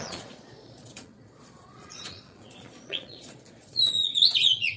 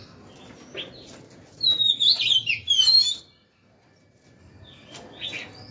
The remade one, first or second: first